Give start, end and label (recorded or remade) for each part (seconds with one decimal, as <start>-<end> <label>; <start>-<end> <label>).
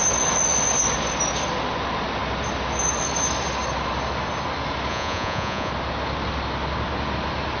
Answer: 0.0-4.9 recorded; 4.9-5.7 remade; 5.7-7.6 recorded